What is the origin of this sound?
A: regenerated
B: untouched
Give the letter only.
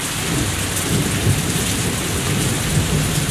B